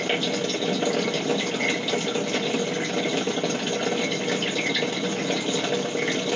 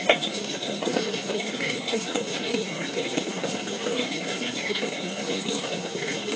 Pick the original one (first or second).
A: first